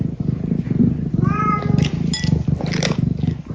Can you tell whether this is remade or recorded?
recorded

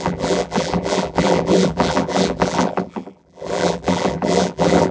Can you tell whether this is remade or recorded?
remade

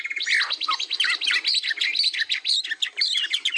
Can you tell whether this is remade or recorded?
recorded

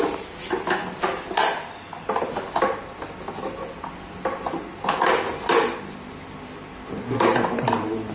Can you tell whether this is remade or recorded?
recorded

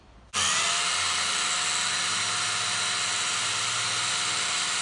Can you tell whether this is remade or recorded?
recorded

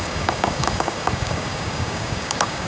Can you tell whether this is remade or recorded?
remade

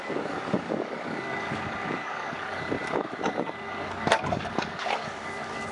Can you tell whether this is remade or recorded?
remade